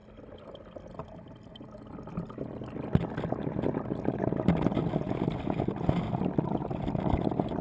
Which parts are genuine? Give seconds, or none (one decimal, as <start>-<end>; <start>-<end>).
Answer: 0.0-7.6